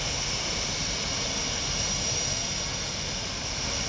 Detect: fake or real real